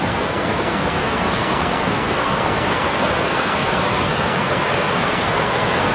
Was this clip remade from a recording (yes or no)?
yes